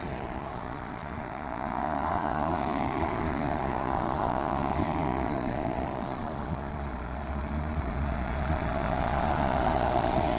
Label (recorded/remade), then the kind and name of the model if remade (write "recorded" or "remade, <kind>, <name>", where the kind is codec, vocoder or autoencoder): remade, vocoder, Vocos